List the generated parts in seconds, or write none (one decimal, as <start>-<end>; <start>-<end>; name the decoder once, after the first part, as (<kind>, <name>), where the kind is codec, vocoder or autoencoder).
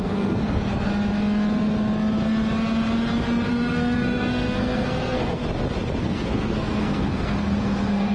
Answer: 0.0-0.9 (codec, SNAC); 3.5-5.4; 6.0-8.1